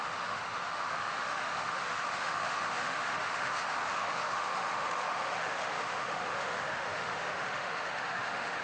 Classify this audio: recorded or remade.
remade